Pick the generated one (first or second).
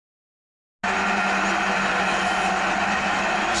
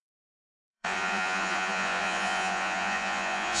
second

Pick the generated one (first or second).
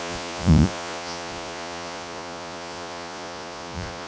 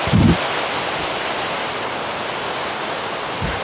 first